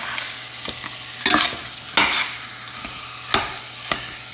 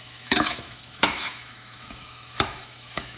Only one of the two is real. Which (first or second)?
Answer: first